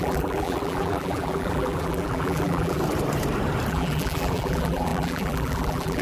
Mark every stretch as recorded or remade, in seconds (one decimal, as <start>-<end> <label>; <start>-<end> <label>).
0.0-2.8 remade; 2.8-3.7 recorded; 3.7-6.0 remade